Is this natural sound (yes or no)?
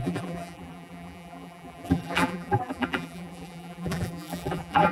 no